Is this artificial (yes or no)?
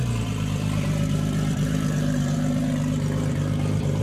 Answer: yes